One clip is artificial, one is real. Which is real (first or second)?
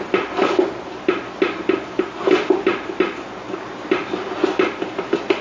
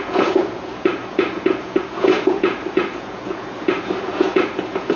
first